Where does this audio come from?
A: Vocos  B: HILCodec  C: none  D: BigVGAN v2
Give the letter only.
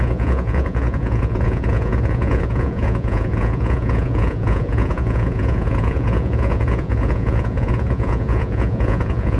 A